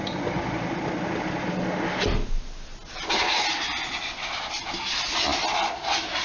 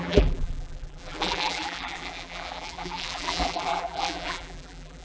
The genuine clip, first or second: first